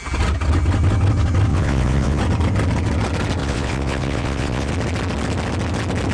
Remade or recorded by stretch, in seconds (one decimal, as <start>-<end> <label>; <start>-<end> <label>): 0.0-1.5 recorded; 1.5-2.2 remade; 2.2-3.4 recorded; 3.4-4.7 remade; 4.7-6.1 recorded